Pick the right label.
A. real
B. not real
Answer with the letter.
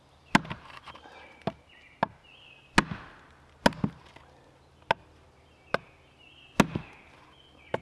A